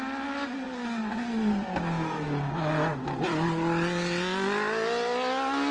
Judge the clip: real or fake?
real